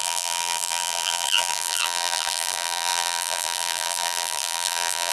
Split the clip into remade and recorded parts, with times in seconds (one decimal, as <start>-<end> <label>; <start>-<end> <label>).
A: 0.0-5.1 remade